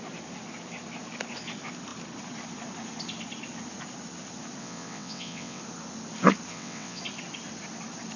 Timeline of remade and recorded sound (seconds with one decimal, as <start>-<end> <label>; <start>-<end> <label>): 0.0-4.6 recorded; 4.6-5.6 remade; 5.6-6.5 recorded; 6.5-7.0 remade; 7.0-8.2 recorded